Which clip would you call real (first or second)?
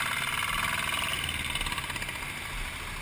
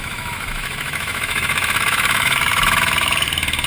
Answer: first